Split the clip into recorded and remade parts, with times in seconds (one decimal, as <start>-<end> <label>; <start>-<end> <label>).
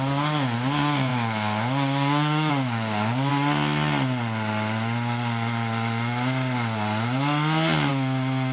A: 0.0-3.3 remade; 3.3-7.9 recorded; 7.9-8.5 remade